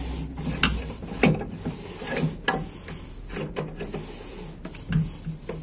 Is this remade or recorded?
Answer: recorded